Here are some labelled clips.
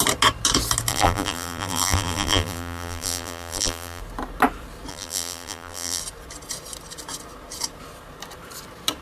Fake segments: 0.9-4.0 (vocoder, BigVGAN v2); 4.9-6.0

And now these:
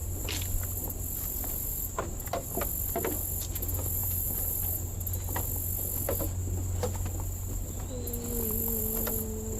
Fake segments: 4.0-4.5 (vocoder, BigVGAN v2)